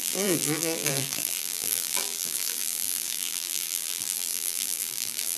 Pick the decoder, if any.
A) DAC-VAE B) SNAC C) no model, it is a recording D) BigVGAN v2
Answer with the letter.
D